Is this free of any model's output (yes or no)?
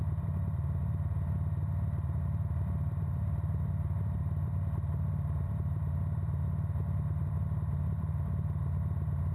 no